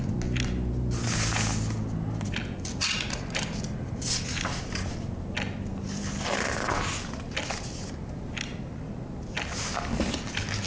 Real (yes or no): yes